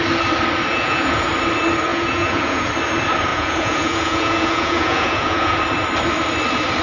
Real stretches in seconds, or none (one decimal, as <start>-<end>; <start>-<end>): 0.0-0.7; 1.3-1.9; 2.7-3.3; 5.6-6.8

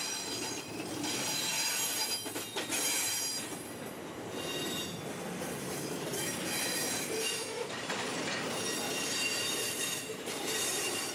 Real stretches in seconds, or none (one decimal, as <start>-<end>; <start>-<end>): 1.5-5.6

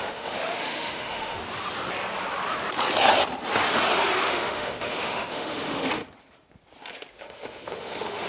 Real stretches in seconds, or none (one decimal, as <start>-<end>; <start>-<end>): 1.4-4.2; 6.0-7.1